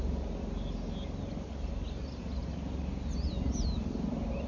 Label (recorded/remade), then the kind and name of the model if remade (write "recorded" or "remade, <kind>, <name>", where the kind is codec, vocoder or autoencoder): recorded